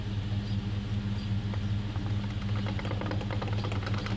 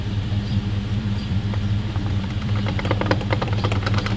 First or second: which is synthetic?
second